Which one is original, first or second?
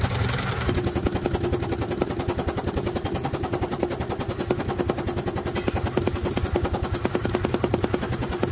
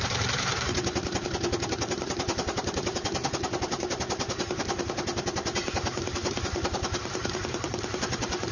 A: first